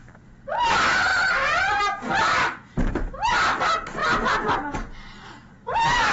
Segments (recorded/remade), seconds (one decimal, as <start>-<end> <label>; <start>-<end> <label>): 0.0-6.1 recorded